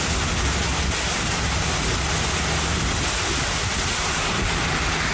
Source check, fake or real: real